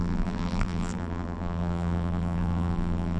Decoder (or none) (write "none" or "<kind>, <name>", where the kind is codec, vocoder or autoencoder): vocoder, BigVGAN v2